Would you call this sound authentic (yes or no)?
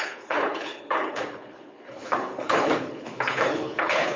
no